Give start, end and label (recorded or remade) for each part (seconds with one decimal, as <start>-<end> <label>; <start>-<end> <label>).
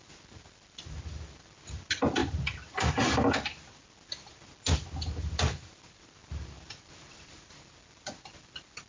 0.0-8.9 recorded